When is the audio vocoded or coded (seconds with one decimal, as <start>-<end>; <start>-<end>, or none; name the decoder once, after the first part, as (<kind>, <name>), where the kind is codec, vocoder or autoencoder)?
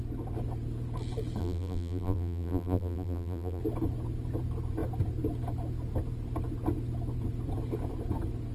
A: 1.4-3.6 (vocoder, BigVGAN v2)